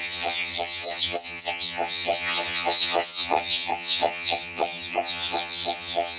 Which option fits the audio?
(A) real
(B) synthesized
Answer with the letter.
B